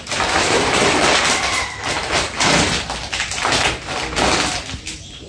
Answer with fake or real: real